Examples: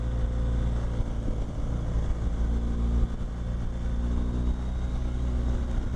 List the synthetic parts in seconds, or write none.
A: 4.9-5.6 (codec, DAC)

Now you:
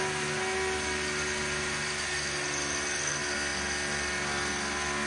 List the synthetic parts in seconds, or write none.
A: none

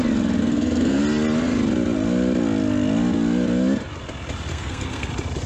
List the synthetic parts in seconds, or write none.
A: 0.4-1.0 (codec, SNAC); 4.5-5.1

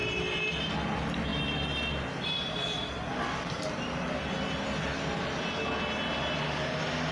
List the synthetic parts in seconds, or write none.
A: none

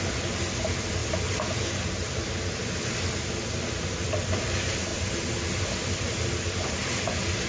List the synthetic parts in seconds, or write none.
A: 0.0-7.5 (vocoder, BigVGAN v2)

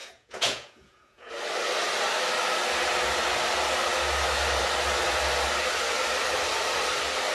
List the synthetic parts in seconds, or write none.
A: 0.0-1.3 (vocoder, Vocos)